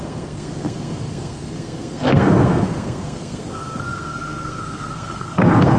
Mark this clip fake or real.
fake